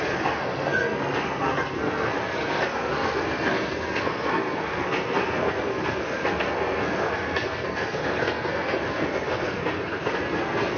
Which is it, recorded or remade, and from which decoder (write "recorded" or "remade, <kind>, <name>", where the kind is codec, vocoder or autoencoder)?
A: remade, codec, SNAC